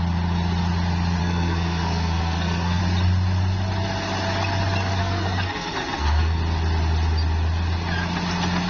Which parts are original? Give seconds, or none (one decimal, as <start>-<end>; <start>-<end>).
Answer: 0.0-1.2; 2.8-5.0; 6.4-8.7